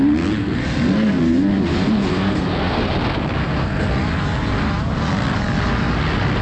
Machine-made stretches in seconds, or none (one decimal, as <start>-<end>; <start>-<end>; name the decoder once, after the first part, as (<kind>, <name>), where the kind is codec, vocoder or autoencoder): 0.4-1.2 (codec, SNAC); 2.1-2.8; 3.4-3.9